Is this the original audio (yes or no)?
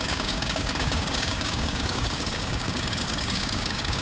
no